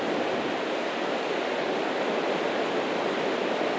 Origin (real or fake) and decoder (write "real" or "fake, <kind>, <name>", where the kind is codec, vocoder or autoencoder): real